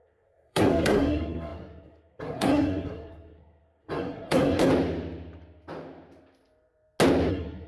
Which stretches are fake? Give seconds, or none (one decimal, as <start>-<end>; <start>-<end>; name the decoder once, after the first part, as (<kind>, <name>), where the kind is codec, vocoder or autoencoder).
0.0-4.7 (codec, SNAC); 7.3-7.7